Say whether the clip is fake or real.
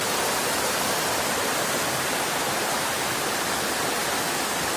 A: real